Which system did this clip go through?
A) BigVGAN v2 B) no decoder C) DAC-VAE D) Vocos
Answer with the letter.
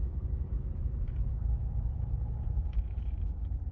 C